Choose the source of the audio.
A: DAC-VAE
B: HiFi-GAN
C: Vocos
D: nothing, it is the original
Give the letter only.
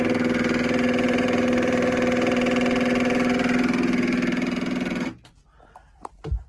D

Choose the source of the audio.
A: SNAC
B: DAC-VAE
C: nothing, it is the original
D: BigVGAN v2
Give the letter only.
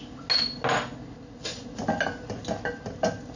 C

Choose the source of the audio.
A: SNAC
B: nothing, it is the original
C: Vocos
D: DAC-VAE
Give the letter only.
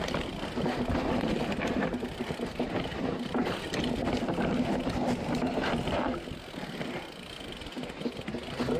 B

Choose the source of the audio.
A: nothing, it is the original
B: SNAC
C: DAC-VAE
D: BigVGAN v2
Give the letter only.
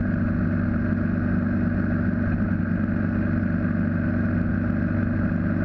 A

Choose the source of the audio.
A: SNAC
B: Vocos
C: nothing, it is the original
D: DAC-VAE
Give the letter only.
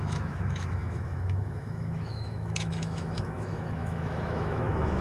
D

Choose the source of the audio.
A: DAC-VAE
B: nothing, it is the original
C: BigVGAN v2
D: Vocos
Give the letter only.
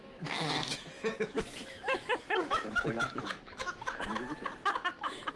A